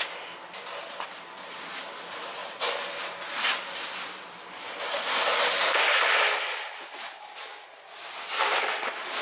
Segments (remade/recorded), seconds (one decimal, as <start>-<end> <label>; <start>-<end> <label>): 0.0-9.2 recorded